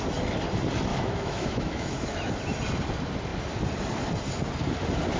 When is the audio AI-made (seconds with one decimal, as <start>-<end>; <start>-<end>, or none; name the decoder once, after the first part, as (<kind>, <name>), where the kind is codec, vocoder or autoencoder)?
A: 0.9-2.3 (autoencoder, DAC-VAE)